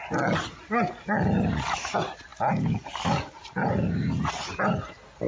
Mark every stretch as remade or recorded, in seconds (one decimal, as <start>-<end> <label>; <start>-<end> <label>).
0.0-5.3 recorded